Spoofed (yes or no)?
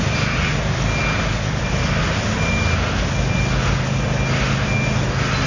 no